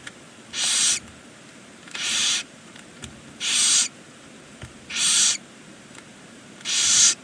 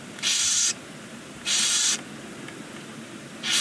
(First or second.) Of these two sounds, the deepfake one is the first